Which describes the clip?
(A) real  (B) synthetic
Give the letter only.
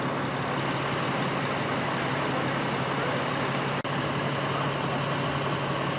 A